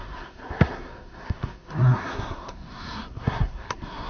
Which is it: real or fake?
fake